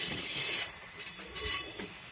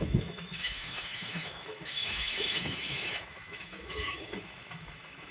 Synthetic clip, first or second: second